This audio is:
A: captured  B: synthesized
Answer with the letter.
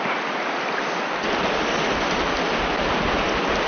A